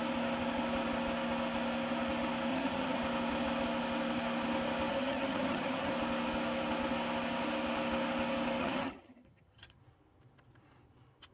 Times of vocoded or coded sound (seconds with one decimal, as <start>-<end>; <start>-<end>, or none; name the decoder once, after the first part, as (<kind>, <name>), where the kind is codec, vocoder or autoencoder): 2.5-3.0 (vocoder, HiFi-GAN); 4.9-5.9; 8.6-9.8